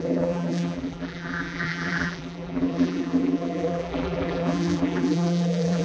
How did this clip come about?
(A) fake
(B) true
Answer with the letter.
A